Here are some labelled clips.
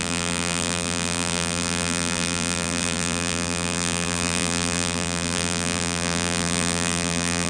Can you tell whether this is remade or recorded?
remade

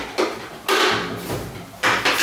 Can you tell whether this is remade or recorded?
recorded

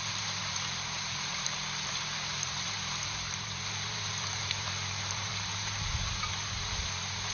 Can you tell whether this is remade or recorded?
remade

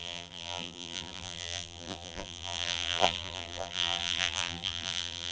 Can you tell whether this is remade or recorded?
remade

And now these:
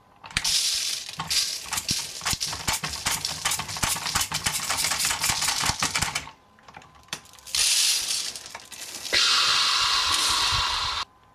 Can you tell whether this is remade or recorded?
remade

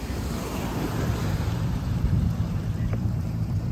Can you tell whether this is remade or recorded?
remade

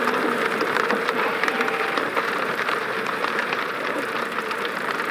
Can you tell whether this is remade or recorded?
remade